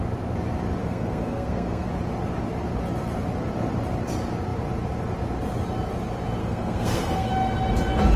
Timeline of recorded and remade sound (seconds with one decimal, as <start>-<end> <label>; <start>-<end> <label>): 0.0-0.8 recorded; 0.8-1.9 remade; 1.9-6.4 recorded; 6.4-7.3 remade; 7.3-8.2 recorded